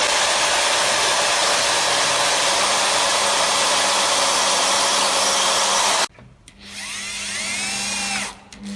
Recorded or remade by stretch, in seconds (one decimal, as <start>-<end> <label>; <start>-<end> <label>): 0.0-1.4 recorded; 1.4-5.8 remade; 5.8-8.8 recorded